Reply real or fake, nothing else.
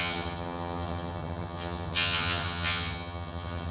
fake